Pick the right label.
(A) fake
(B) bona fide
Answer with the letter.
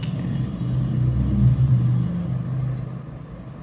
B